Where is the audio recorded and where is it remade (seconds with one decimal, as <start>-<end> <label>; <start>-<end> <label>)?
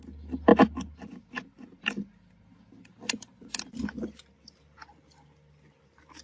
0.0-6.2 recorded